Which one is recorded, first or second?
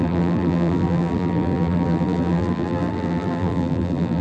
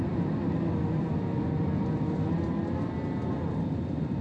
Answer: second